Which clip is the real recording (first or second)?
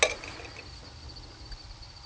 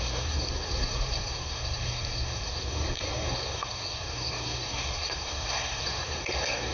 first